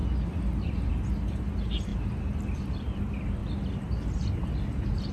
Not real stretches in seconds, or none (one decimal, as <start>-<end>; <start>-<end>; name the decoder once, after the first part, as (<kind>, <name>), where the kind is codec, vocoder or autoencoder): none